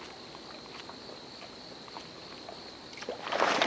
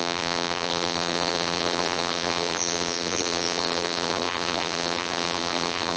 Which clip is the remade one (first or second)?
second